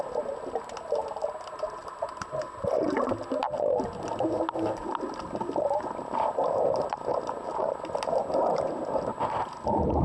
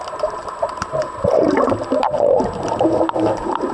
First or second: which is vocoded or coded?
second